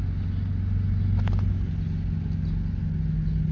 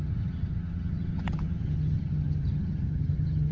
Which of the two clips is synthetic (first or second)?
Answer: second